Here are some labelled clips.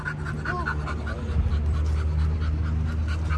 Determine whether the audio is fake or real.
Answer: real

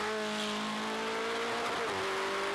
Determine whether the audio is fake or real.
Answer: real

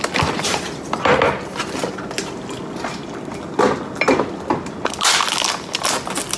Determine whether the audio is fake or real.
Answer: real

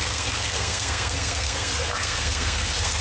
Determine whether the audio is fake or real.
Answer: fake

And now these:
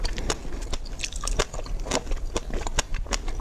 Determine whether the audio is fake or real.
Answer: real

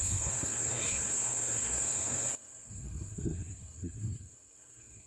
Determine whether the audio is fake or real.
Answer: fake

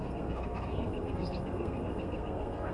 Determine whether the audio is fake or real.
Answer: fake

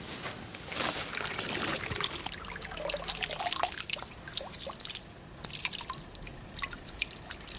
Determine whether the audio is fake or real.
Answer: real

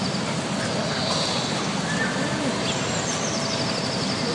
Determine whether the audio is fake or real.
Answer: real